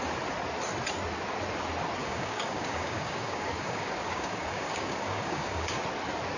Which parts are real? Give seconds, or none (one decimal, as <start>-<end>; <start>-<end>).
0.0-2.0; 5.8-6.4